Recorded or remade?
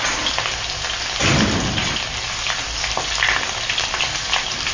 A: recorded